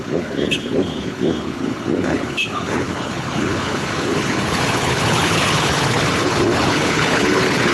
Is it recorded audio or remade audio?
remade